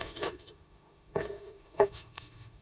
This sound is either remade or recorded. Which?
remade